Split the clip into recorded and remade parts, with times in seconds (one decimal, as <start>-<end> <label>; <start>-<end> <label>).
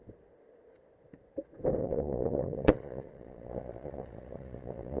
0.0-1.8 recorded; 1.8-5.0 remade